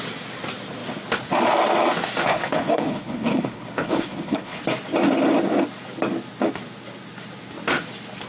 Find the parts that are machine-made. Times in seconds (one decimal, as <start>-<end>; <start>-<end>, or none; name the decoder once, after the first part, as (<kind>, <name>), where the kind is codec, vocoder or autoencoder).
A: 2.3-4.6 (codec, HILCodec)